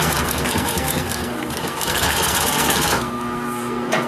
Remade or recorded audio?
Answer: remade